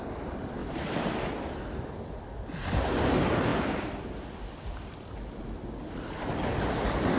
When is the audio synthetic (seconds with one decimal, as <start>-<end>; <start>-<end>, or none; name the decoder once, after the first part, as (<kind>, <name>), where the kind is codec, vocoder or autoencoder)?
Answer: 0.6-3.0 (vocoder, BigVGAN v2); 3.5-5.4